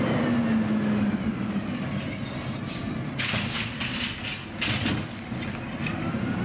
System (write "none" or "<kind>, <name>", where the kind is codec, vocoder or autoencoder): none